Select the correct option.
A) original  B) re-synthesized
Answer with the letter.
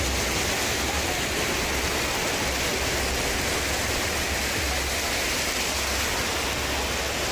A